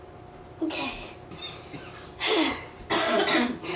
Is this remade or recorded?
recorded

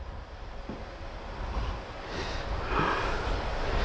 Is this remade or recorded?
recorded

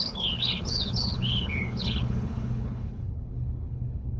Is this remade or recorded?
remade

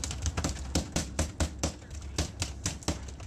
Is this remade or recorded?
recorded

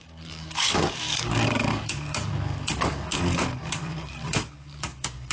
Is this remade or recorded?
remade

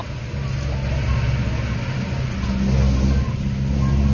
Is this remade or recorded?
recorded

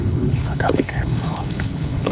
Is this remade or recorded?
remade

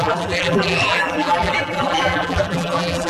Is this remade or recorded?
remade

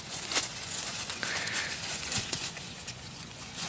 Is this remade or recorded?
remade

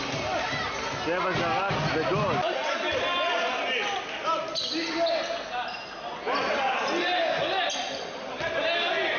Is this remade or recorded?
recorded